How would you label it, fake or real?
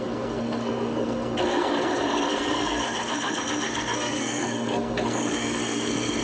fake